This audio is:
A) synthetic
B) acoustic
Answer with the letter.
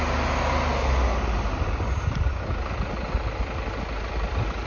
B